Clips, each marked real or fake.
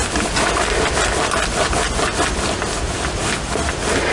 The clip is real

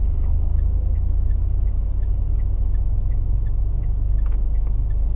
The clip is real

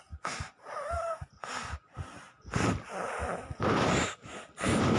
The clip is real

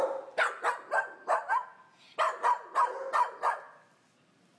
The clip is real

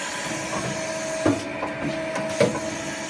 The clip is real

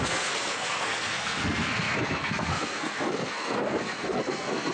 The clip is fake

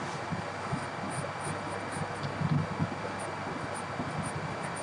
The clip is real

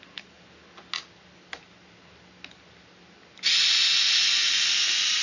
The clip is real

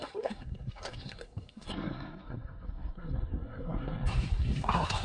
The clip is fake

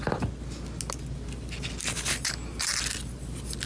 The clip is real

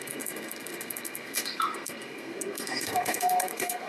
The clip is fake